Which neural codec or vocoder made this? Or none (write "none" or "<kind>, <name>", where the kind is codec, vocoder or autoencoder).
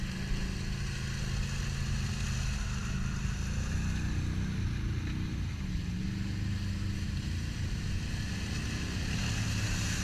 none